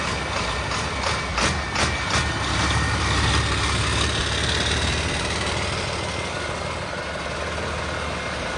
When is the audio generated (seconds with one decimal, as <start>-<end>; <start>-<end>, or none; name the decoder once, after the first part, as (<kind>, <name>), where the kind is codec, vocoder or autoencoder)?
none